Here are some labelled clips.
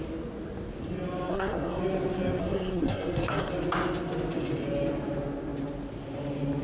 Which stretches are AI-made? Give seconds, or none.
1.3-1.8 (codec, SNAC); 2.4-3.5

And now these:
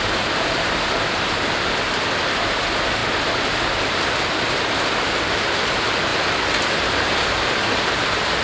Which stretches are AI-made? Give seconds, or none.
0.0-6.1 (vocoder, BigVGAN v2); 6.8-8.4

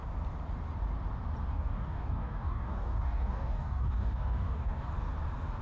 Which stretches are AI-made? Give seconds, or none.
1.5-4.9 (codec, DAC)

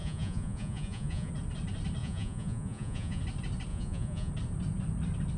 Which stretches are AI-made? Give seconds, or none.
0.0-1.3 (vocoder, Vocos); 2.0-3.2; 3.7-4.3

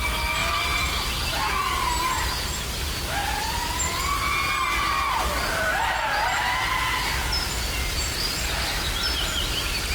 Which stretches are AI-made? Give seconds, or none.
0.4-1.1 (vocoder, BigVGAN v2)